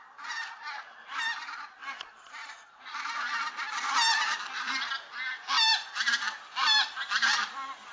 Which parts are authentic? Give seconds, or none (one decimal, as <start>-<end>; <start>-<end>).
0.0-1.8; 3.0-7.9